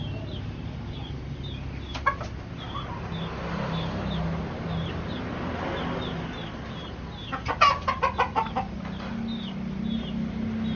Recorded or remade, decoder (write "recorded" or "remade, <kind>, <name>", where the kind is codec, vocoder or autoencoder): recorded